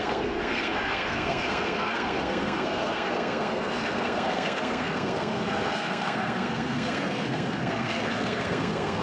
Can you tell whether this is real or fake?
fake